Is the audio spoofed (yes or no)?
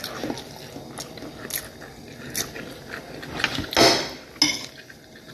no